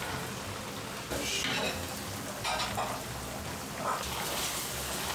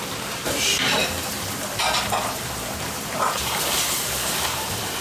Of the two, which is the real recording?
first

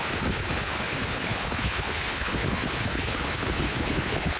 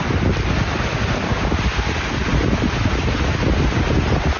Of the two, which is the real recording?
second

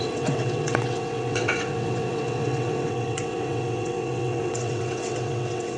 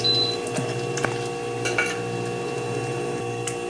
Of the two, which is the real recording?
second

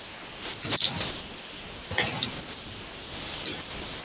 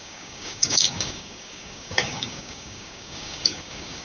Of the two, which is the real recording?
first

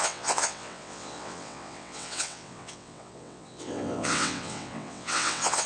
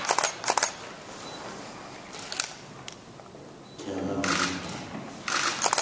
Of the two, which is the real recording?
second